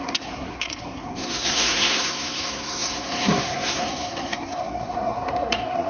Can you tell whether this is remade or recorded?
remade